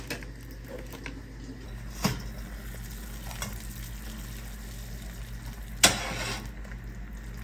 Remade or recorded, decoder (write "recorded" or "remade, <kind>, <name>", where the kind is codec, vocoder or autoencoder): recorded